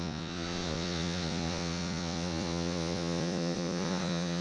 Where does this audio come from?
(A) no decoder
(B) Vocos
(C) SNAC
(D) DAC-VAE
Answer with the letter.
B